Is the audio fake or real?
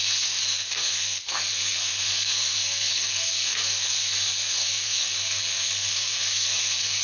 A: fake